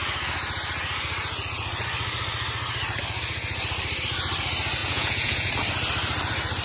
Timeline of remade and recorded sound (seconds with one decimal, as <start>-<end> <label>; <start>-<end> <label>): 0.0-4.8 recorded; 4.8-5.5 remade; 5.5-6.6 recorded